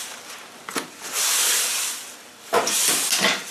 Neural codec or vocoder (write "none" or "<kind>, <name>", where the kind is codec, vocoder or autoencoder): none